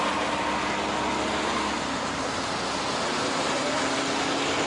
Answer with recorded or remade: recorded